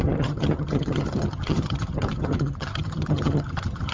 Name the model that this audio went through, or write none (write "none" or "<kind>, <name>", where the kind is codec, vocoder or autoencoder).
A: vocoder, HiFi-GAN